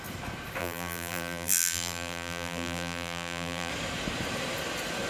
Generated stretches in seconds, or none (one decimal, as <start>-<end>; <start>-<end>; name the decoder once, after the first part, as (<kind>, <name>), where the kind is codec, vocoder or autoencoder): 0.6-3.7 (vocoder, BigVGAN v2)